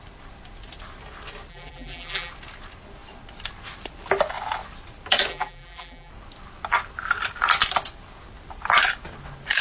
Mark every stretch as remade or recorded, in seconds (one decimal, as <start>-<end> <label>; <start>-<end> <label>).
0.0-1.5 recorded; 1.5-2.3 remade; 2.3-5.3 recorded; 5.3-6.1 remade; 6.1-9.6 recorded